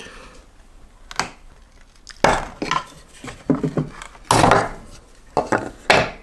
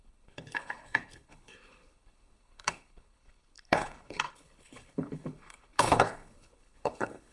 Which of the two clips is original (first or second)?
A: first